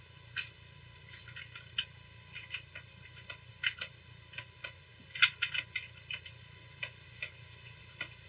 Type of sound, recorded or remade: recorded